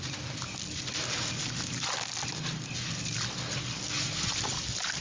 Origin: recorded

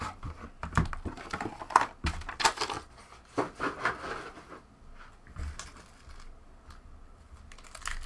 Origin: recorded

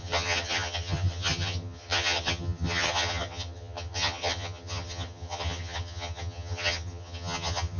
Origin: remade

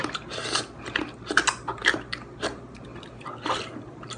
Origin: recorded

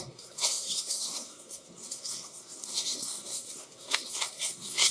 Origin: remade